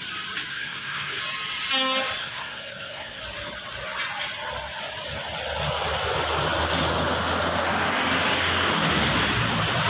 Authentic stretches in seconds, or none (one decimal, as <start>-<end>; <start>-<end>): 0.0-0.5; 1.2-2.2; 3.2-9.9